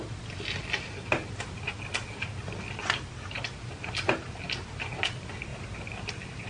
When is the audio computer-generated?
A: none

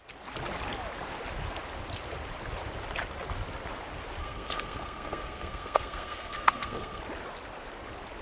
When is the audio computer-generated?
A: 4.2-7.0 (codec, SNAC)

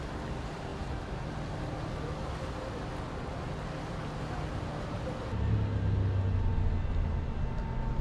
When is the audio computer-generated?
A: none

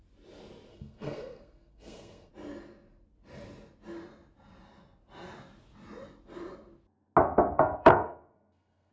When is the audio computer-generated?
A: 0.7-2.3 (codec, SNAC); 7.2-8.9

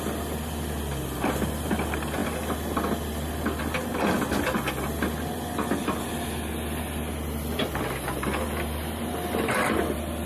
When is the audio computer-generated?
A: none

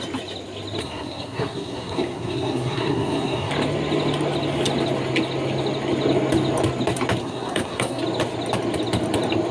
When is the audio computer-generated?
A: 0.8-3.5 (codec, SNAC); 7.2-8.0